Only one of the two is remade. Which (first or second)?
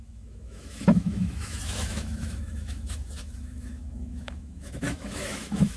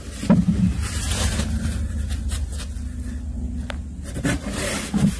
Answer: first